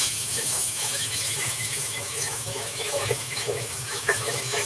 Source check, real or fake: fake